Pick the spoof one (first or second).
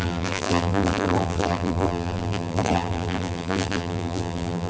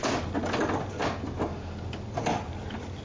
first